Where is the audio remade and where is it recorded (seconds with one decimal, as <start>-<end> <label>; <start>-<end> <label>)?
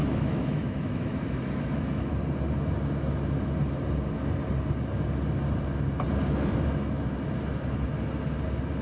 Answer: 0.0-2.1 remade; 2.1-8.8 recorded